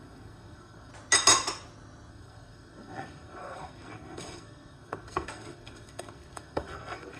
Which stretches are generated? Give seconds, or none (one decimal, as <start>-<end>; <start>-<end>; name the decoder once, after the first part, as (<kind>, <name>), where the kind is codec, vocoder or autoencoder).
0.0-0.9 (codec, SNAC); 2.1-7.2